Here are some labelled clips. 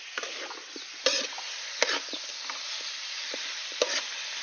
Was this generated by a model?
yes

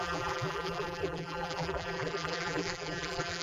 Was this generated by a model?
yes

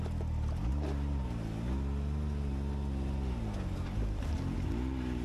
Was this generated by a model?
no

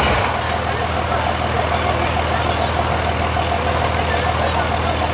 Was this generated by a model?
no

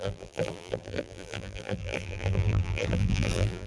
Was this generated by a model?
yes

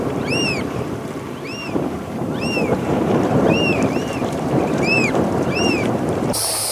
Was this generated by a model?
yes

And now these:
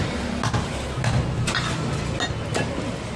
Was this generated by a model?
no